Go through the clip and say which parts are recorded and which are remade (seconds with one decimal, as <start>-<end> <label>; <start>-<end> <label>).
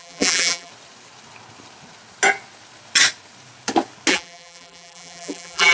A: 0.0-0.7 remade; 0.7-4.1 recorded; 4.1-5.7 remade